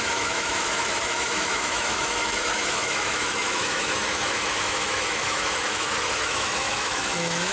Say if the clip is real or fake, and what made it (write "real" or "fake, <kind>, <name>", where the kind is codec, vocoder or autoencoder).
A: fake, autoencoder, DAC-VAE